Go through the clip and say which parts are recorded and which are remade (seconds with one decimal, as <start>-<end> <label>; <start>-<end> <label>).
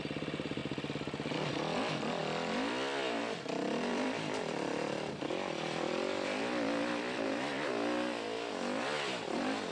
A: 0.0-2.2 recorded; 2.2-3.2 remade; 3.2-3.9 recorded; 3.9-7.3 remade; 7.3-9.7 recorded